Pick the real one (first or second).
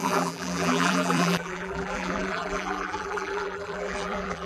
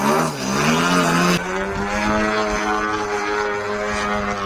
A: second